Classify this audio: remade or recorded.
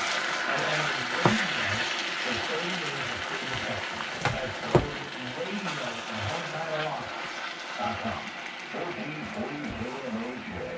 recorded